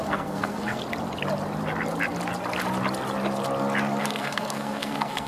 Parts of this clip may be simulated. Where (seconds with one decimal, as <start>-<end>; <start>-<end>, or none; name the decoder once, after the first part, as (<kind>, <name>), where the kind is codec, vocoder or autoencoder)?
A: 0.0-0.8 (codec, SNAC); 4.0-5.3